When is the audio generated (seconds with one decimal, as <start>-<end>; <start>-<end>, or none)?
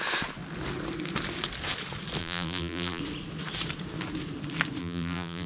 2.2-3.0; 4.8-5.5